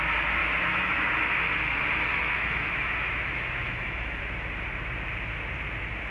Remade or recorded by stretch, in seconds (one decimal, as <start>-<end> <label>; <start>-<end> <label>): 0.0-0.4 recorded; 0.4-1.1 remade; 1.1-2.1 recorded; 2.1-4.2 remade; 4.2-6.1 recorded

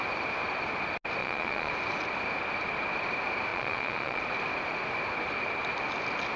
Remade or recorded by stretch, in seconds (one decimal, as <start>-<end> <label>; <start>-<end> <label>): 0.0-1.2 recorded; 1.2-1.7 remade; 1.7-3.5 recorded; 3.5-4.2 remade; 4.2-6.4 recorded

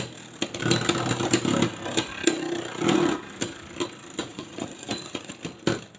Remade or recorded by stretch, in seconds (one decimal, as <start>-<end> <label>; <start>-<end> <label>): 0.0-4.2 recorded; 4.2-5.3 remade; 5.3-6.0 recorded

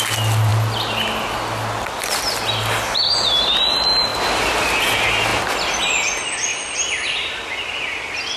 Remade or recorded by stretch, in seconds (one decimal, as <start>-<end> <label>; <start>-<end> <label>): 0.0-0.5 recorded; 0.5-2.2 remade; 2.2-4.1 recorded; 4.1-4.8 remade; 4.8-5.3 recorded; 5.3-5.8 remade; 5.8-6.5 recorded; 6.5-7.3 remade; 7.3-8.4 recorded

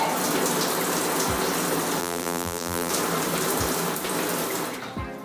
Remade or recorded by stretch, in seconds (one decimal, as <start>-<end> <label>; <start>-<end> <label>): 0.0-2.0 recorded; 2.0-2.9 remade; 2.9-5.2 recorded

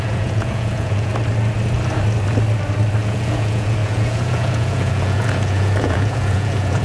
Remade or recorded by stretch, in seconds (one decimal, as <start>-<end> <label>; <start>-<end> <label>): 0.0-1.1 remade; 1.1-3.0 recorded; 3.0-6.8 remade

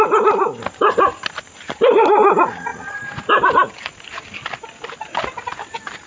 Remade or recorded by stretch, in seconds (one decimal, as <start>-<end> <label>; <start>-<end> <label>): 0.0-6.1 recorded